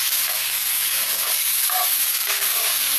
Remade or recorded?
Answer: remade